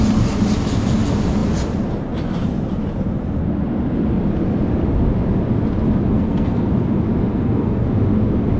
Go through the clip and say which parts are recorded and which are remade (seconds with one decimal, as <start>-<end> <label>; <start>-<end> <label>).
0.0-6.1 recorded; 6.1-6.7 remade; 6.7-7.3 recorded; 7.3-7.9 remade; 7.9-8.6 recorded